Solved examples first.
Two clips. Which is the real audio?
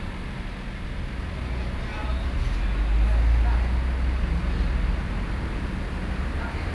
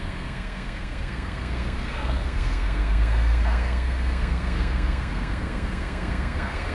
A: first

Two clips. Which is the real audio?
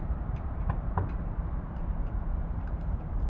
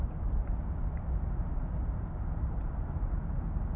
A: second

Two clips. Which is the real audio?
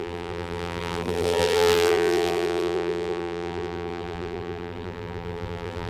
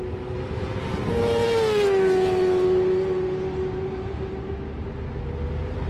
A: second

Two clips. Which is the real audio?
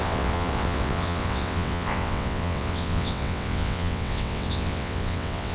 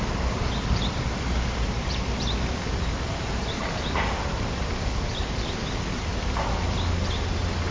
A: second